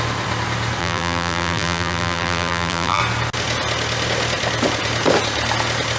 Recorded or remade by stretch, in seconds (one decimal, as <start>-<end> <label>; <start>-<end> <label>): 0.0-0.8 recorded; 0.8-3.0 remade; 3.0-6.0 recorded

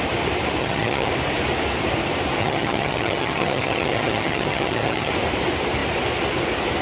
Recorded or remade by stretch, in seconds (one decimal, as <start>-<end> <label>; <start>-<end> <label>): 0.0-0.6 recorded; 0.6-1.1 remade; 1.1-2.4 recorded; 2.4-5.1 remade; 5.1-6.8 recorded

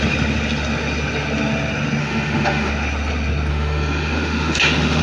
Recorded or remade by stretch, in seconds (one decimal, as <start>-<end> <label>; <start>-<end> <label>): 0.0-2.0 recorded; 2.0-2.7 remade; 2.7-3.5 recorded; 3.5-5.0 remade

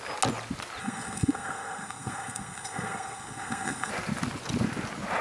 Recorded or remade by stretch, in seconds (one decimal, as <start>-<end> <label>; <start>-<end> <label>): 0.0-0.8 recorded; 0.8-3.9 remade; 3.9-5.2 recorded